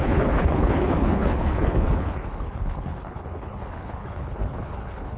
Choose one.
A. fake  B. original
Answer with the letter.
A